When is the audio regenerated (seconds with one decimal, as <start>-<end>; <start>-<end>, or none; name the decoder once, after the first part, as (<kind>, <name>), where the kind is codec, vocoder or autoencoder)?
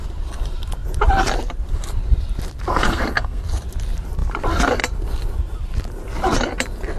2.7-3.4 (codec, SNAC)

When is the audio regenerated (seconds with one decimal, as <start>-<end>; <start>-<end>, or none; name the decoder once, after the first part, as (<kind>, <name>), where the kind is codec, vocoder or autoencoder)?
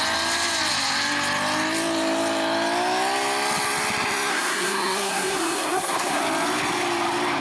4.3-6.2 (codec, SNAC)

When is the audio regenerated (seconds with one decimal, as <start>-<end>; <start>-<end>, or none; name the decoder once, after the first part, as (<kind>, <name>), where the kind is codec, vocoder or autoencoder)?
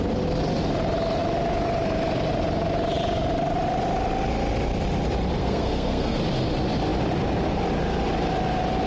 5.4-6.2 (codec, SNAC)